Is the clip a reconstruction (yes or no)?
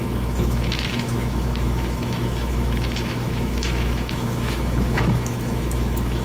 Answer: yes